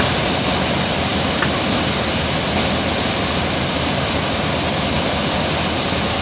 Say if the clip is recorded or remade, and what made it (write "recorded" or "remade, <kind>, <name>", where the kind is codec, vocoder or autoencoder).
recorded